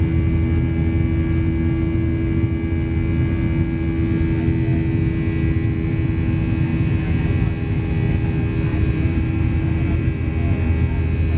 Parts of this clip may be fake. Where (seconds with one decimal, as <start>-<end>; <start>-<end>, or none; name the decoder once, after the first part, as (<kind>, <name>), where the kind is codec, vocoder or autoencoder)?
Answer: 8.7-10.3 (vocoder, BigVGAN v2)